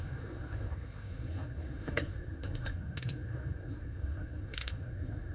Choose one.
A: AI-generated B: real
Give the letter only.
A